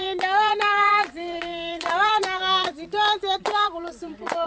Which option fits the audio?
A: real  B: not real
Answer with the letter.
B